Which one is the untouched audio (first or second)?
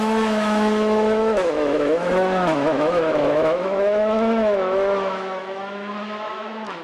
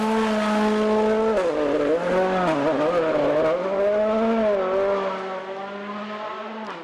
second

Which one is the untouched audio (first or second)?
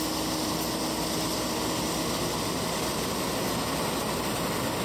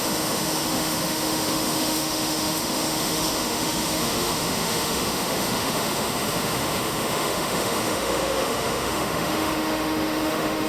first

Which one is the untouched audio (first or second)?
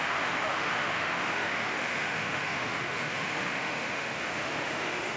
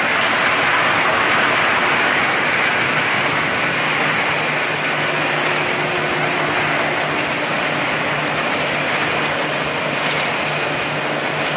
second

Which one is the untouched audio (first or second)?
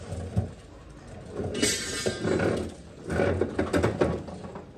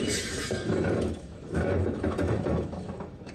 first